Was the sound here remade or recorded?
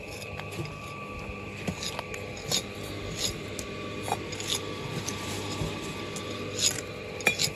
recorded